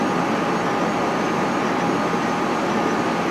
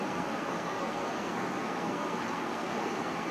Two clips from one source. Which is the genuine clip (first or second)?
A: first